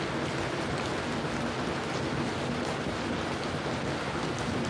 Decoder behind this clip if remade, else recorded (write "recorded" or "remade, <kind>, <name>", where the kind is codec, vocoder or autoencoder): recorded